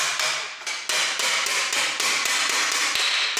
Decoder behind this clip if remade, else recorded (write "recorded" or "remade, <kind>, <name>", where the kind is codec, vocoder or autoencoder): recorded